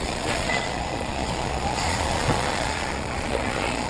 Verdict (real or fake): fake